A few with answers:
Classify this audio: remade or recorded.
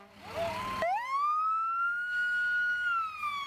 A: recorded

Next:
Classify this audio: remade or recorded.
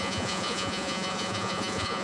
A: remade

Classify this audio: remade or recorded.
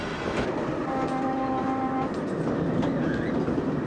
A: recorded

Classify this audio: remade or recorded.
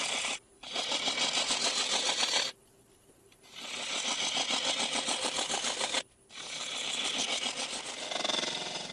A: recorded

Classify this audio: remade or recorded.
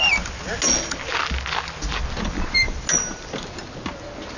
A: recorded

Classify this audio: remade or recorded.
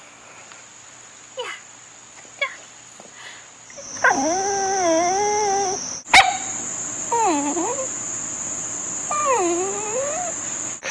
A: recorded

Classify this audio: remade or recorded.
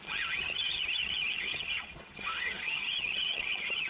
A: remade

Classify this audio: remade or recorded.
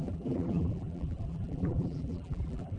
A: remade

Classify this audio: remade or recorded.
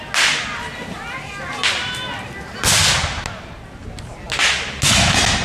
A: recorded